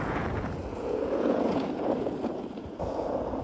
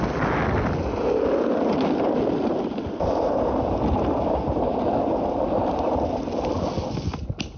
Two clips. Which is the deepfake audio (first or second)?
first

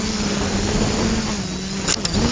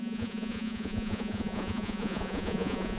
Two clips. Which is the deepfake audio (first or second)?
second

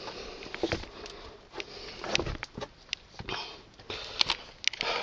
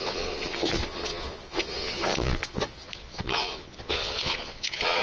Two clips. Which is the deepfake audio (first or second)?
second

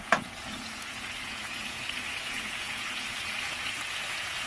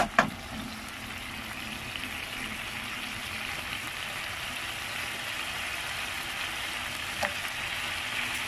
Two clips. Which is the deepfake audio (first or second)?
first